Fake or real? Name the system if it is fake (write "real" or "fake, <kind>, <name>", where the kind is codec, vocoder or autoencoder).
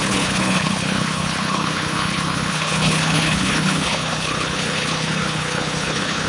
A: fake, codec, HILCodec